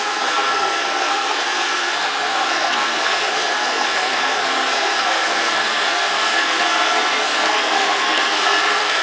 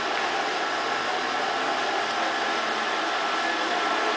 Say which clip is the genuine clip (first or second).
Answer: second